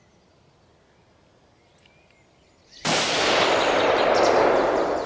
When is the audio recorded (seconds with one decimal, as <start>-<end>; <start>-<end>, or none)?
0.0-5.1